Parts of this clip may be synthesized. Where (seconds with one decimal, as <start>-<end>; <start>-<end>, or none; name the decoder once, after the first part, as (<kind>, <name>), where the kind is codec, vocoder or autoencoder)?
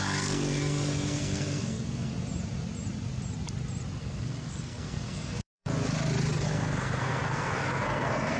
0.0-2.1 (codec, SNAC); 4.0-5.7; 6.4-8.4